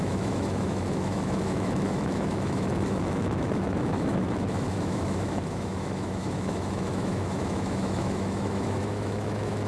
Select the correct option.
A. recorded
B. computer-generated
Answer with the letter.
B